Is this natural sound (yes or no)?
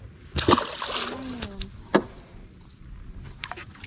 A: yes